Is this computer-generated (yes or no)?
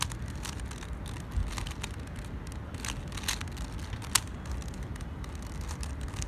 no